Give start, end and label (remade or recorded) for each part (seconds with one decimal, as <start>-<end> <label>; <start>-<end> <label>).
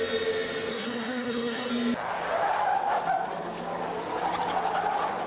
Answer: 0.0-0.7 recorded; 0.7-1.7 remade; 1.7-5.3 recorded